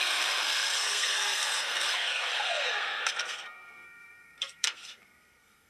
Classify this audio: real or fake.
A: fake